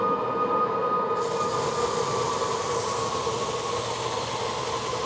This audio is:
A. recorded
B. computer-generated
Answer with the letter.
A